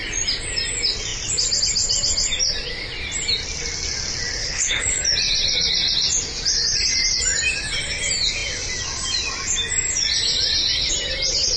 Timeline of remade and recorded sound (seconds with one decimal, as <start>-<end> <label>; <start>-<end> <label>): 0.0-4.4 recorded; 4.4-5.0 remade; 5.0-11.6 recorded